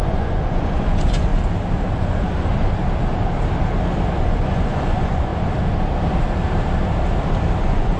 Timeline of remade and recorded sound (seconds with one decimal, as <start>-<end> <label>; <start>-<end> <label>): 0.0-1.3 remade; 1.3-2.0 recorded; 2.0-2.5 remade; 2.5-4.2 recorded; 4.2-5.3 remade; 5.3-7.6 recorded; 7.6-8.0 remade